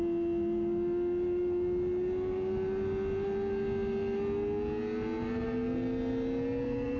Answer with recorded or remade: recorded